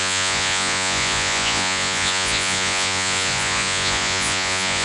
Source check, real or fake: fake